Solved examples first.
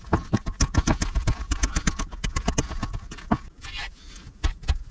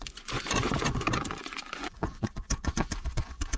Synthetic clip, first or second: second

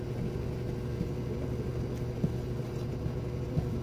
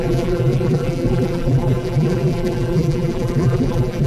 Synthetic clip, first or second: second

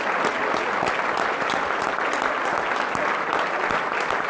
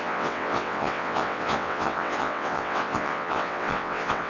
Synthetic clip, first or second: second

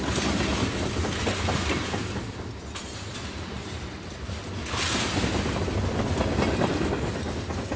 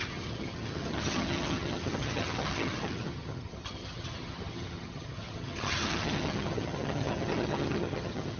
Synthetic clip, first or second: second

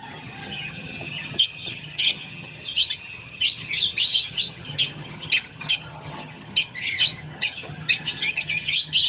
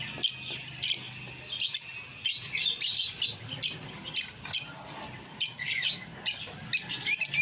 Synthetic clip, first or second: first